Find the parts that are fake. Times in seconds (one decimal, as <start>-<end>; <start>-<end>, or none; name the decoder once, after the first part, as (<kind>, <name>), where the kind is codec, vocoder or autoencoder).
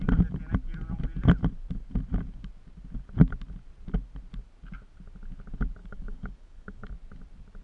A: 5.8-6.9 (codec, DAC)